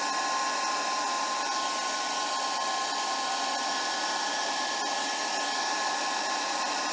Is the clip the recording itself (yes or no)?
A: yes